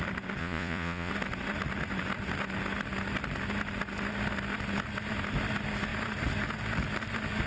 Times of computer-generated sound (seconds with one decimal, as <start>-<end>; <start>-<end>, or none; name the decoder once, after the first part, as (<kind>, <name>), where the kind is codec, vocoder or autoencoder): 0.4-1.1 (vocoder, Vocos)